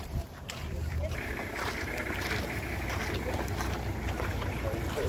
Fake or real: fake